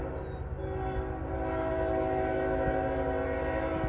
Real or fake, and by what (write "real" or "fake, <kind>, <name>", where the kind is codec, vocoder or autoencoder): real